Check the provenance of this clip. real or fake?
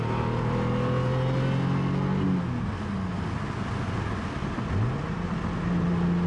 real